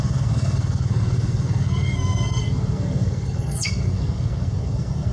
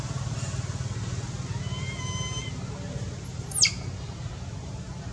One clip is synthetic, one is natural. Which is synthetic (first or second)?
first